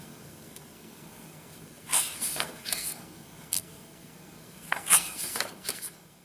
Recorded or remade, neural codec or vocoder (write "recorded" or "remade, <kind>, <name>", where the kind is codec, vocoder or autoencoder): remade, codec, SNAC